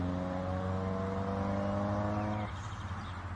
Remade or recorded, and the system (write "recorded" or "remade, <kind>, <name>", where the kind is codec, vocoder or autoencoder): recorded